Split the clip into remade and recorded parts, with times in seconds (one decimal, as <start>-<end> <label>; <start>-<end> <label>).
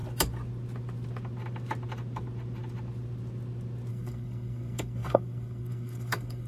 0.0-3.9 recorded; 3.9-6.5 remade